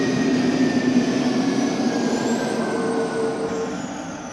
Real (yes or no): yes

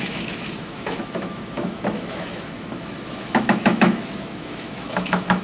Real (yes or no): no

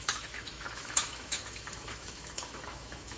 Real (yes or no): no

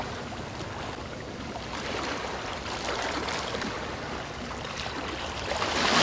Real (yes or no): yes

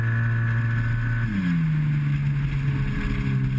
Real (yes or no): yes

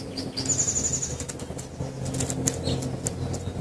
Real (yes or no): yes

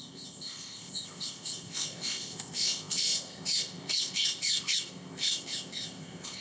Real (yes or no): no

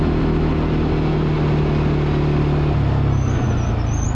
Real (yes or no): yes